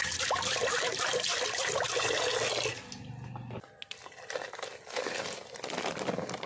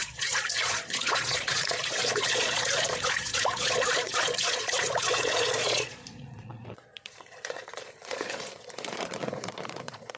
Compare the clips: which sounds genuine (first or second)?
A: first